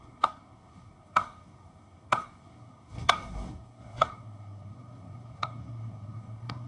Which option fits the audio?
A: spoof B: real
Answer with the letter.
A